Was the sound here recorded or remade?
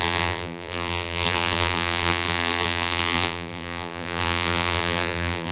remade